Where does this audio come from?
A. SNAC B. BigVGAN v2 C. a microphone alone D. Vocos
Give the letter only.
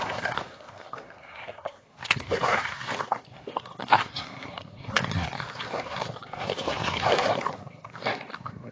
A